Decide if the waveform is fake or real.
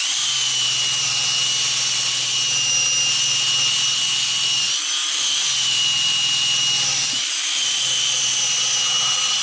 real